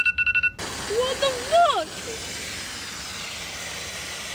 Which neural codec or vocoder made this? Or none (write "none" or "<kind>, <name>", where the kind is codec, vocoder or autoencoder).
none